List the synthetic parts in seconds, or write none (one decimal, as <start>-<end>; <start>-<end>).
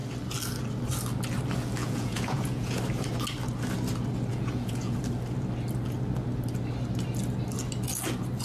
1.8-2.8; 4.3-5.0